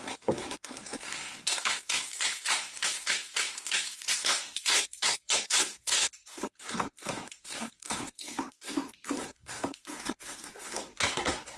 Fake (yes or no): yes